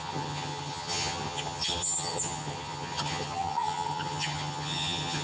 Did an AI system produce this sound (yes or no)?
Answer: yes